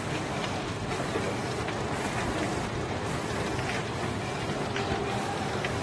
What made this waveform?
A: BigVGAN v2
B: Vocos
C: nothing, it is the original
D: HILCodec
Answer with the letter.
C